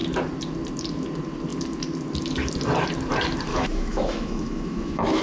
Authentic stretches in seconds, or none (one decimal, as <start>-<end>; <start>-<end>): 0.0-3.5